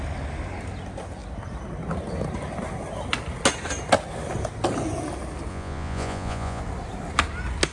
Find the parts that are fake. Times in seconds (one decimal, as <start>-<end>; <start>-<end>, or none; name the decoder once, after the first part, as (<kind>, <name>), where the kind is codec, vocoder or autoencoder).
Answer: 5.5-6.6 (vocoder, Vocos)